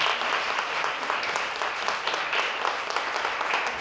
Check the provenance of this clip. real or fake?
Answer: fake